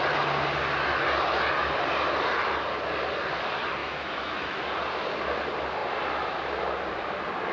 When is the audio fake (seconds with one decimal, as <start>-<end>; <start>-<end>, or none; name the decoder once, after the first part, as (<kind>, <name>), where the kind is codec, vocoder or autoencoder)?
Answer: 3.8-4.6 (autoencoder, DAC-VAE)

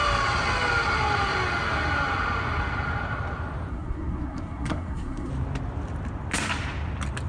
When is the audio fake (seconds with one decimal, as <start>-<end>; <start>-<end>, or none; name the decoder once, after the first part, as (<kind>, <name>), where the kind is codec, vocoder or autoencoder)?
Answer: 3.7-5.3 (codec, SNAC)

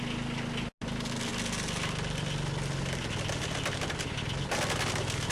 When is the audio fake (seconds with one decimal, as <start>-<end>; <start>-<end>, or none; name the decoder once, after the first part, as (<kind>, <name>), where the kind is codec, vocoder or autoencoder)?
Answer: none

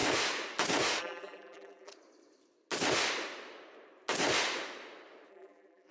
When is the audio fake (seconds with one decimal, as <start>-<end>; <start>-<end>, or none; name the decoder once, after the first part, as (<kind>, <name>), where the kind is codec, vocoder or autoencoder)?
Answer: 1.0-1.9 (vocoder, BigVGAN v2); 5.3-5.9

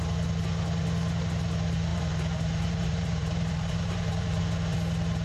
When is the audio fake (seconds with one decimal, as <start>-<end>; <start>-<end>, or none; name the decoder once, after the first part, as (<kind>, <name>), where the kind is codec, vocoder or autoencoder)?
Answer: 1.9-4.4 (vocoder, BigVGAN v2)

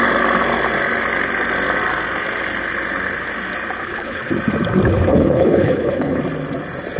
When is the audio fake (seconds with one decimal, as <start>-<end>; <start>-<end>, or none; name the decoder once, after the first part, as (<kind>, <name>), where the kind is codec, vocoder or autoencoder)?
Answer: 3.8-4.3 (codec, HILCodec); 5.1-6.2